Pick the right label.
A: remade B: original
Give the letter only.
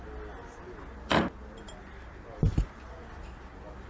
B